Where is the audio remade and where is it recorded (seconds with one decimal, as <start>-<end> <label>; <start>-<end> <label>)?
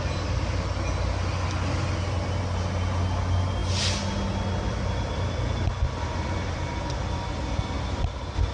0.0-8.5 recorded